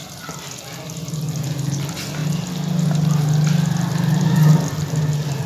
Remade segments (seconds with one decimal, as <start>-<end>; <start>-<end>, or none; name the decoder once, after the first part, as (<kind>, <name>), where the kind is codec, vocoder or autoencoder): none